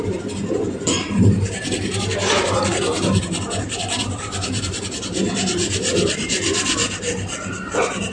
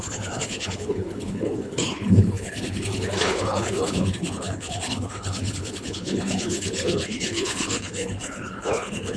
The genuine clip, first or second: first